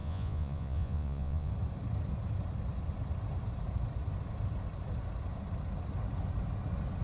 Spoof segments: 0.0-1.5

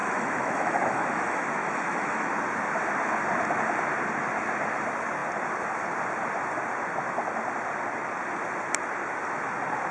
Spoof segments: 0.0-2.3

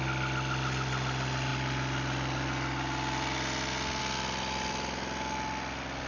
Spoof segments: none

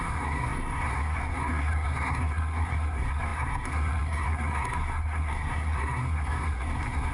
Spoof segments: 0.0-7.1

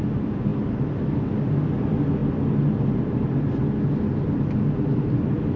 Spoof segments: none

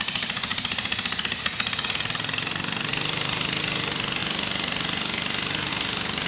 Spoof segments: 0.5-1.2; 2.9-3.6; 4.2-5.7

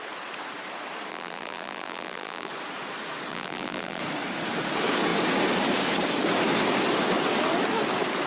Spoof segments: 1.1-2.5; 3.3-4.0

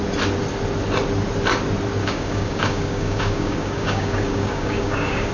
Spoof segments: 2.0-5.3